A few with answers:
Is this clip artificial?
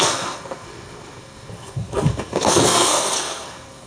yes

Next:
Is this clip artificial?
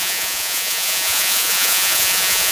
yes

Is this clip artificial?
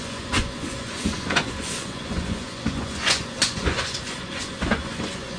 yes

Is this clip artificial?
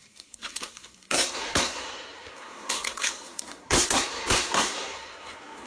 yes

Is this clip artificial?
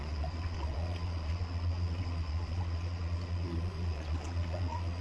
yes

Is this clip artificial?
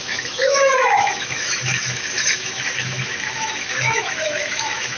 yes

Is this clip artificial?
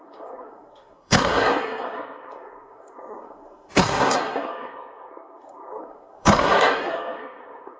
yes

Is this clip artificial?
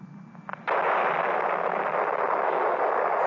no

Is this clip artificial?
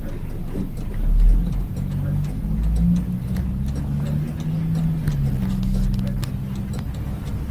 no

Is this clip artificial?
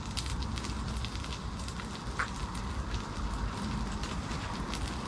no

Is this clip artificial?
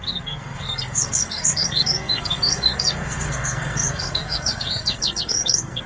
yes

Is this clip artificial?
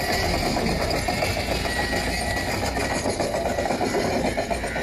no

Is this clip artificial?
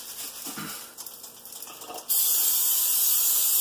no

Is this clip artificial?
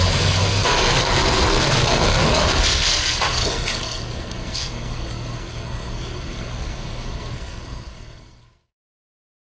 yes